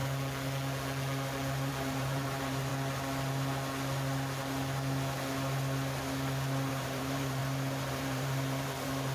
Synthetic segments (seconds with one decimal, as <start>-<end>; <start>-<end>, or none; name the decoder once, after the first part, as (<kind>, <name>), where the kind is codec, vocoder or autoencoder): 1.7-2.7 (vocoder, BigVGAN v2); 6.7-7.4; 7.9-9.1

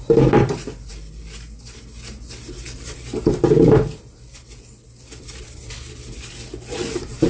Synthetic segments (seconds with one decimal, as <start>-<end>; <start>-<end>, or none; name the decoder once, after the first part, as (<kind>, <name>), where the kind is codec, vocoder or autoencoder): none

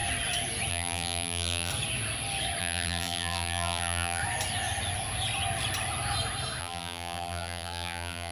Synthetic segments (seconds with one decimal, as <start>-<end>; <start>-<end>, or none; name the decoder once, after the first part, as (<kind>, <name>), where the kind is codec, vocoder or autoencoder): 0.7-1.7 (vocoder, BigVGAN v2); 2.6-4.2; 6.6-8.3

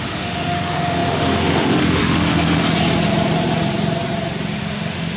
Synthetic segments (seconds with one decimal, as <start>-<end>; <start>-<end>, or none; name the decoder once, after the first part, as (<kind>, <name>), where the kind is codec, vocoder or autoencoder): 0.0-2.6 (autoencoder, DAC-VAE); 4.7-5.2

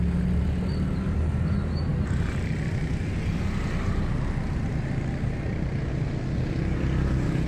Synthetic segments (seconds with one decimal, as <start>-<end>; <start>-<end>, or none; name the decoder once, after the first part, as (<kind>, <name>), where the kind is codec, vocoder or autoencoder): none

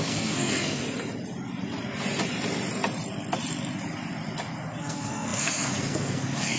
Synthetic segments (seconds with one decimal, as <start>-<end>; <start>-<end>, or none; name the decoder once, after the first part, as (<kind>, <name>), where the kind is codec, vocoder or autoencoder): 0.0-0.8 (codec, SNAC); 4.8-6.6

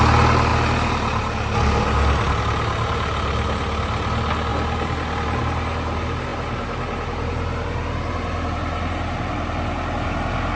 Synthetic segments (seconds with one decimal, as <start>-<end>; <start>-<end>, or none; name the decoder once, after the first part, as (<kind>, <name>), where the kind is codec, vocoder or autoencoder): none

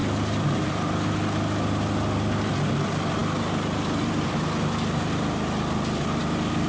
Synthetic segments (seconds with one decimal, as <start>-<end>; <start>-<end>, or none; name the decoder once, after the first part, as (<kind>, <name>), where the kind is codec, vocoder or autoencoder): none